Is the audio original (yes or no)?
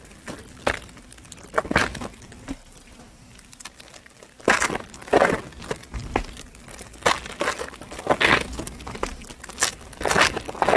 yes